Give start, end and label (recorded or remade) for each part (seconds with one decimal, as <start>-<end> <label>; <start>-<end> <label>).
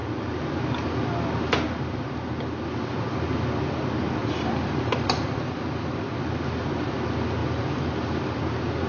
0.0-4.2 recorded; 4.2-6.2 remade; 6.2-7.4 recorded; 7.4-7.9 remade; 7.9-8.9 recorded